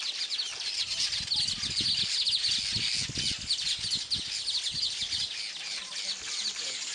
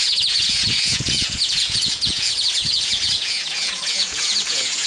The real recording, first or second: first